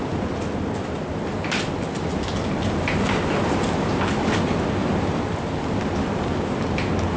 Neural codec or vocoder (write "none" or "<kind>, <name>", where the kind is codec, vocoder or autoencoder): none